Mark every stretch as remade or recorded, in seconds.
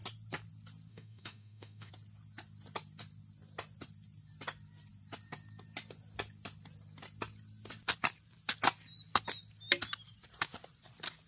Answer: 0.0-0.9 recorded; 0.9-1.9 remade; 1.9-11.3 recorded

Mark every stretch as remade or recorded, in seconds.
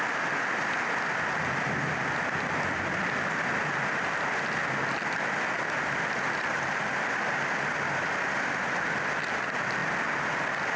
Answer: 0.0-10.8 recorded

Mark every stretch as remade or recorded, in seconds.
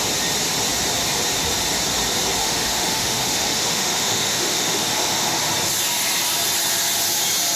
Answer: 0.0-2.4 recorded; 2.4-5.4 remade; 5.4-7.6 recorded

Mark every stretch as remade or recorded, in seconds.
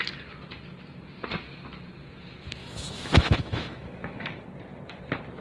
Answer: 0.0-2.6 recorded; 2.6-4.3 remade; 4.3-5.4 recorded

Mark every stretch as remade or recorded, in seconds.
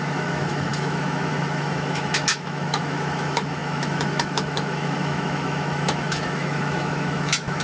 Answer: 0.0-7.6 remade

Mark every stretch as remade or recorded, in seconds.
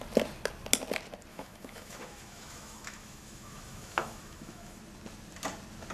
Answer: 0.0-1.3 recorded; 1.3-4.8 remade; 4.8-5.9 recorded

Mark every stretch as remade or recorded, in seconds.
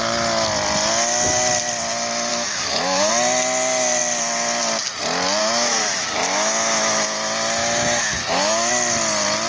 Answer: 0.0-2.3 recorded; 2.3-3.1 remade; 3.1-5.4 recorded; 5.4-8.7 remade; 8.7-9.5 recorded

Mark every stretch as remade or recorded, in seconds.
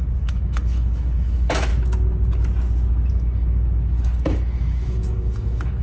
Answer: 0.0-1.7 remade; 1.7-3.1 recorded; 3.1-5.8 remade